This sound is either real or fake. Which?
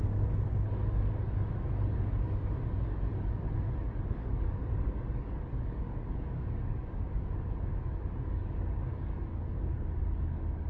fake